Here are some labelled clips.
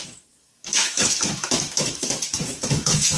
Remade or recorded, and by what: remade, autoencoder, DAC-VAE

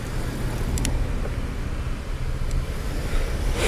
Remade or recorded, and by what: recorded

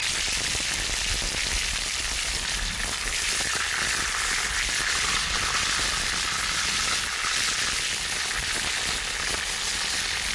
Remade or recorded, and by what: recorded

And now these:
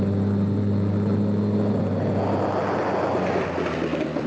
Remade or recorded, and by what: recorded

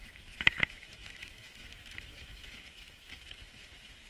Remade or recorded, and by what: remade, autoencoder, DAC-VAE